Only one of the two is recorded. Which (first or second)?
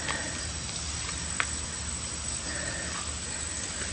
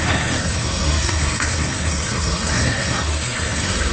first